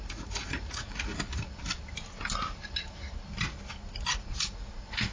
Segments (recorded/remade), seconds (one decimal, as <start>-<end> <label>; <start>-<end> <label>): 0.0-1.1 remade; 1.1-4.2 recorded; 4.2-5.1 remade